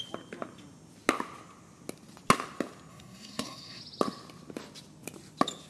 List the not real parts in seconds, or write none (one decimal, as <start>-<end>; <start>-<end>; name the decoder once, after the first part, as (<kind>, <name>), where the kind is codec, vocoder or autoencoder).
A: 2.9-3.8 (codec, SNAC)